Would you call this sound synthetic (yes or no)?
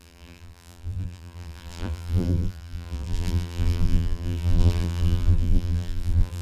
yes